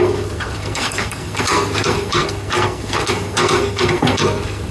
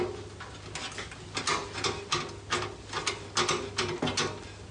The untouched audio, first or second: second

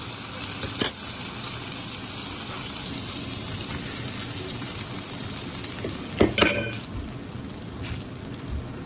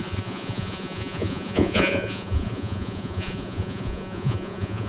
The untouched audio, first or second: first